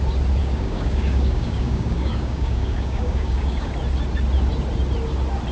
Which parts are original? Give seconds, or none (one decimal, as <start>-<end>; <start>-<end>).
0.0-0.4; 3.7-5.5